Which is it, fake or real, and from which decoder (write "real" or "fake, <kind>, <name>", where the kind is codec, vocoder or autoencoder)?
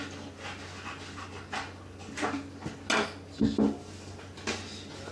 real